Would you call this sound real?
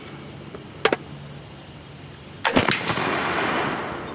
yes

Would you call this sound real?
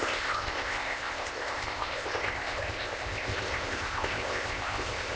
no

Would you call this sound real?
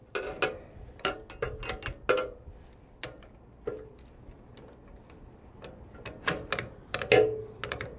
yes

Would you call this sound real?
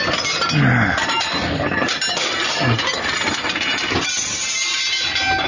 yes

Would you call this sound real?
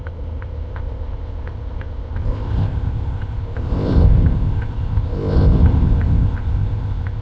no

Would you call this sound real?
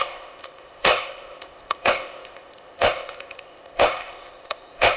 no